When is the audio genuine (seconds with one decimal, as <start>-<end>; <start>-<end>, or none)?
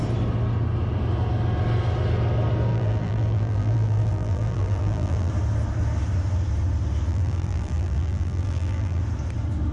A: 0.0-2.7; 5.3-7.1; 9.0-9.7